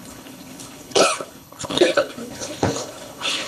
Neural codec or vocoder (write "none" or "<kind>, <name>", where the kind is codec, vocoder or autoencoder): codec, HILCodec